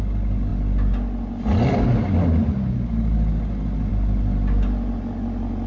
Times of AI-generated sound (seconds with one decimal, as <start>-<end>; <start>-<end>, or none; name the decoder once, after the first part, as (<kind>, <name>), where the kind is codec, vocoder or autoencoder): none

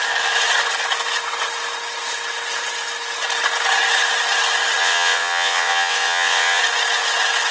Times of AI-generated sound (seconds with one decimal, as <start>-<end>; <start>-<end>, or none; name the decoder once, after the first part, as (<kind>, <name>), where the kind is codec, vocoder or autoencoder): 4.8-6.6 (vocoder, WaveNeXt)

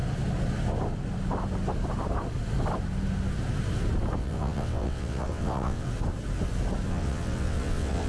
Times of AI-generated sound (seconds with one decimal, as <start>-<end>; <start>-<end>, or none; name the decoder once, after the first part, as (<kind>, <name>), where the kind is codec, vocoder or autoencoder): 4.2-5.9 (vocoder, WaveNeXt); 6.9-8.1

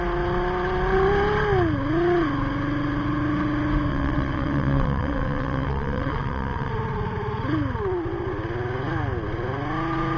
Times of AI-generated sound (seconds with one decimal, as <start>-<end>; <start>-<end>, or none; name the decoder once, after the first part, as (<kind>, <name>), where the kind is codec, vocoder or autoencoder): 3.9-6.7 (vocoder, WaveNeXt)

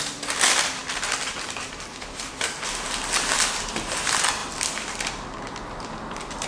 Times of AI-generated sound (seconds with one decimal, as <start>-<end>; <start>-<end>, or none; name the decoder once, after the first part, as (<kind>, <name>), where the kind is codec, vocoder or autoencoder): none